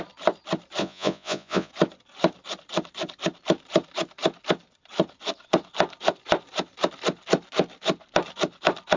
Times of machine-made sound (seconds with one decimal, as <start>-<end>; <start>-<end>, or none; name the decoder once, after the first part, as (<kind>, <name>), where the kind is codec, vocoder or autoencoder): 0.8-1.7 (vocoder, Vocos)